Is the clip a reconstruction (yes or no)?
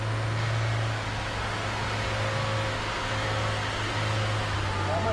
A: no